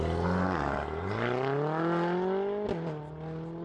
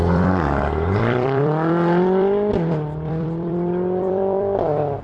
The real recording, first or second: first